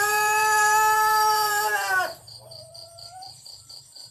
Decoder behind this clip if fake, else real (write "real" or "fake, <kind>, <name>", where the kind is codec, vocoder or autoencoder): fake, vocoder, BigVGAN v2